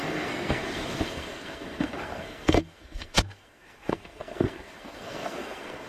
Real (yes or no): no